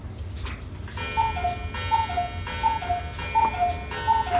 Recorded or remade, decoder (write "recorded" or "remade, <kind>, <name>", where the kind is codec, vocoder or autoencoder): recorded